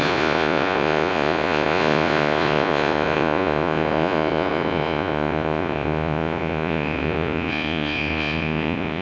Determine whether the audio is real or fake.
fake